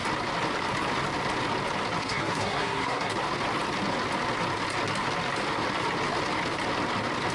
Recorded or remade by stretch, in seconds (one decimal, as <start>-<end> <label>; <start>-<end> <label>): 0.0-2.0 recorded; 2.0-3.1 remade; 3.1-7.3 recorded